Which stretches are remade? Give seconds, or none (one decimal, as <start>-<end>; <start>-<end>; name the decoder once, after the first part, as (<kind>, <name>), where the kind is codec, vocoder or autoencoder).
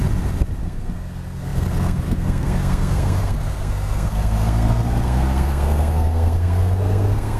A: 0.6-7.4 (codec, SNAC)